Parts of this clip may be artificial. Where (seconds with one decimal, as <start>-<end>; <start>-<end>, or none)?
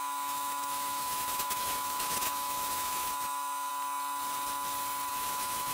0.0-3.7; 5.1-5.7